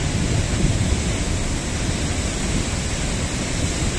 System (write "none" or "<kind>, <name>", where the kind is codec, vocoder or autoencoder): none